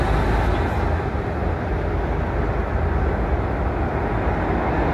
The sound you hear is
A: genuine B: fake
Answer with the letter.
A